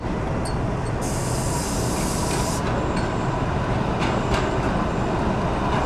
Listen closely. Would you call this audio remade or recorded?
recorded